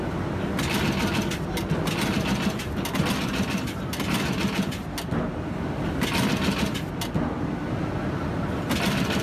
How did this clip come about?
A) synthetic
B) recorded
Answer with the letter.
B